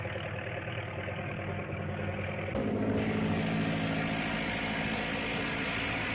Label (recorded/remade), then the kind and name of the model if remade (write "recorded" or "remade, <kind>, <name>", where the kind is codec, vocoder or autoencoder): recorded